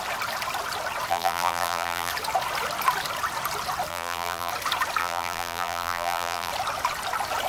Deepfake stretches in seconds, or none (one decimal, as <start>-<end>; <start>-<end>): 1.1-2.1; 3.9-4.5; 5.0-6.5

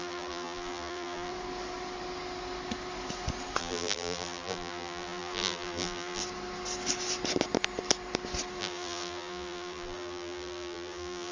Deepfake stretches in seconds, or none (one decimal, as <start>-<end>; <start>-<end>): 0.0-1.3; 3.6-6.2; 8.6-11.3